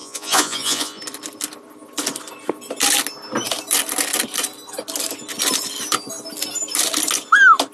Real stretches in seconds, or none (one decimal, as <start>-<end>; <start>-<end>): 1.0-7.7